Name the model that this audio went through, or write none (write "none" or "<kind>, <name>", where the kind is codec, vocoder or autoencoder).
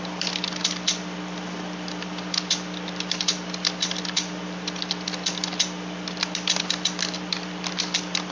vocoder, BigVGAN v2